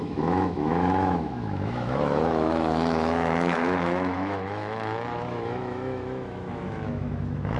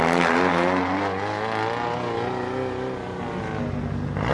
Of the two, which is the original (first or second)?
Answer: second